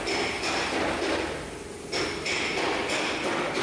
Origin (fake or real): real